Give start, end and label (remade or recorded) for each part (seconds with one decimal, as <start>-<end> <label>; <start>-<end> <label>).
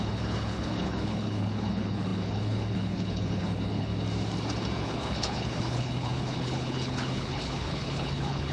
0.0-3.9 remade; 3.9-4.8 recorded; 4.8-8.5 remade